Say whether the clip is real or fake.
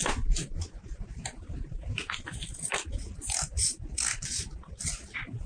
real